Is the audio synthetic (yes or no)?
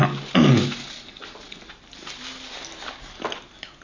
no